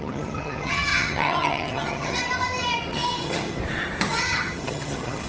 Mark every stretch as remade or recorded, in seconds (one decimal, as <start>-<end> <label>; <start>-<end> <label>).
0.0-2.2 remade; 2.2-2.9 recorded; 2.9-3.6 remade; 3.6-4.1 recorded; 4.1-5.3 remade